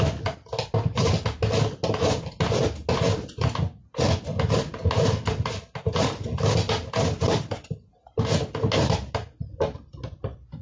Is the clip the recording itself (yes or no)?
yes